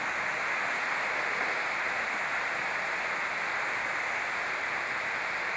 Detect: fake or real real